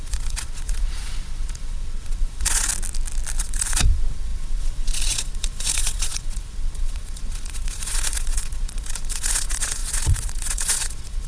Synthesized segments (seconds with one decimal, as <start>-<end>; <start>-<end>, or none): 0.0-2.7; 3.4-11.3